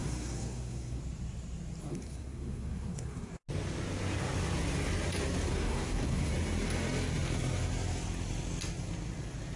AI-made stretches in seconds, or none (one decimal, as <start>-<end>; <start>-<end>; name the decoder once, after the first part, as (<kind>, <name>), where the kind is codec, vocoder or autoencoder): 0.0-1.0 (codec, SNAC); 1.9-3.3; 5.5-6.3